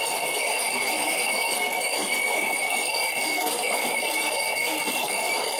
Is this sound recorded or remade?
remade